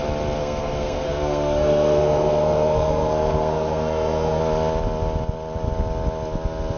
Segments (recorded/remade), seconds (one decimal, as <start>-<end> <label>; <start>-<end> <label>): 0.0-0.4 recorded; 0.4-4.4 remade; 4.4-6.8 recorded